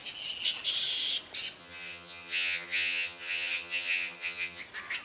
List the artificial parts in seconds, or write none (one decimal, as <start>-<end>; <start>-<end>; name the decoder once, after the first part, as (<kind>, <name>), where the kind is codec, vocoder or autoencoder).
1.6-4.6 (vocoder, HiFi-GAN)